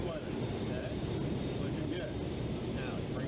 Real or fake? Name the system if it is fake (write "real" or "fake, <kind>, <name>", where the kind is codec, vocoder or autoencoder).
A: real